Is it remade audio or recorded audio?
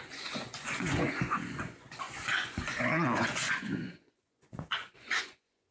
remade